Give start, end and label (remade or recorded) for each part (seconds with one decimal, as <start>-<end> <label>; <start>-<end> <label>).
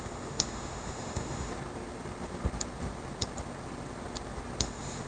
0.0-1.5 remade; 1.5-4.6 recorded; 4.6-5.1 remade